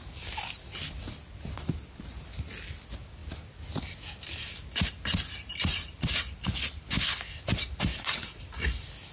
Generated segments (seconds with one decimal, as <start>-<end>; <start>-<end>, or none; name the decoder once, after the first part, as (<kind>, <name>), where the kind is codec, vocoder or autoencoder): 7.9-8.4 (vocoder, Vocos)